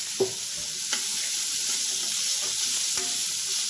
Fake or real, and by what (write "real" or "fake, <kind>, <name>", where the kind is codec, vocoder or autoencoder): real